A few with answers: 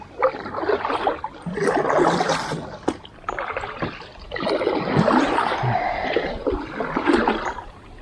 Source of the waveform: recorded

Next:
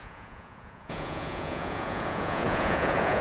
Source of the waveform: remade